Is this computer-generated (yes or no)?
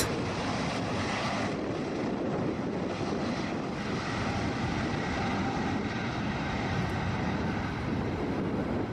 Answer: yes